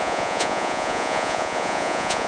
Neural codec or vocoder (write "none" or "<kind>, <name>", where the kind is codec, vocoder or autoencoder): vocoder, Vocos